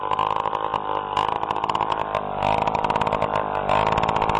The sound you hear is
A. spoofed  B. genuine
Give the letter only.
B